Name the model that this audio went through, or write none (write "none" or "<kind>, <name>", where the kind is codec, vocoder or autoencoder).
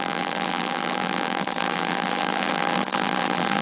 vocoder, BigVGAN v2